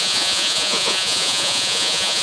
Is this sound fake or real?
fake